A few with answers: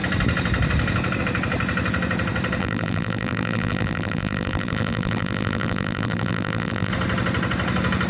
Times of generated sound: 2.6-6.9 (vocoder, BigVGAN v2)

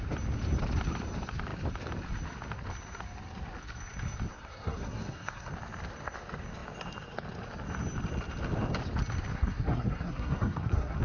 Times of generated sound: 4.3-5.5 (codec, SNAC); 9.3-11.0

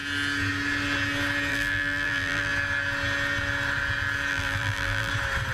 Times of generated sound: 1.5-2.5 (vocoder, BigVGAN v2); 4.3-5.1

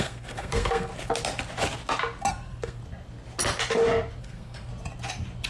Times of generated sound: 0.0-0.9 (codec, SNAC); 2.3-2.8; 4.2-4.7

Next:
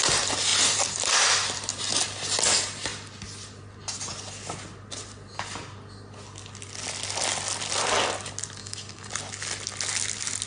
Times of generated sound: 8.6-9.1 (codec, DAC)